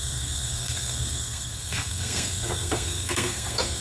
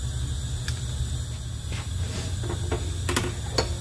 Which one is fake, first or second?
first